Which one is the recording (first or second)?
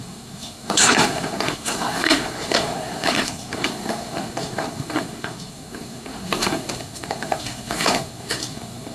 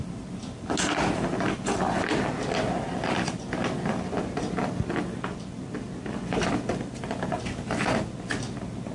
second